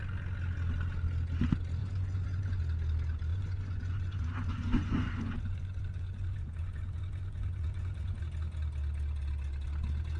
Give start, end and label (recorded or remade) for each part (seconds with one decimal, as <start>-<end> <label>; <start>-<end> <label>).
0.0-1.8 recorded; 1.8-2.6 remade; 2.6-3.3 recorded; 3.3-8.2 remade; 8.2-10.2 recorded

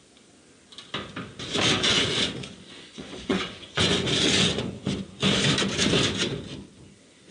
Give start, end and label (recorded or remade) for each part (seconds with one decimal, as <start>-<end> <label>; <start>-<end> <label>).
0.0-1.9 recorded; 1.9-4.9 remade; 4.9-7.3 recorded